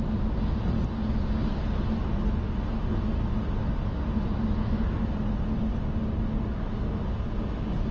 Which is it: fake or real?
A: real